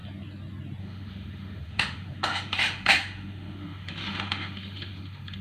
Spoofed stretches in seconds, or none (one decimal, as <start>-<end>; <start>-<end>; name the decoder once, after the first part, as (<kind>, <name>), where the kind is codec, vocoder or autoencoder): 0.8-5.4 (autoencoder, DAC-VAE)

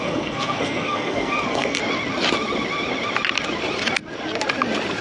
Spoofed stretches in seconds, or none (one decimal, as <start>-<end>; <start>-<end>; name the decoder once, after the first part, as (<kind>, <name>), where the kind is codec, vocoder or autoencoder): 0.0-1.8 (codec, SNAC)

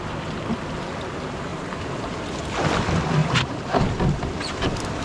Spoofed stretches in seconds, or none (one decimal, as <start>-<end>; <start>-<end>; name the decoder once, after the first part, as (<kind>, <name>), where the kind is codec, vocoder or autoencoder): 1.5-2.5 (vocoder, BigVGAN v2); 3.2-4.0

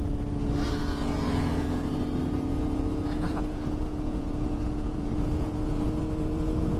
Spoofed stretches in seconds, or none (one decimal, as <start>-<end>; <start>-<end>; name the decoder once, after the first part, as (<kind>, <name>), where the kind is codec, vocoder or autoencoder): 0.8-1.9 (vocoder, Vocos); 2.5-6.8